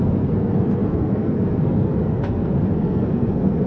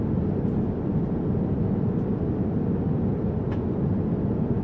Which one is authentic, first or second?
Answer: second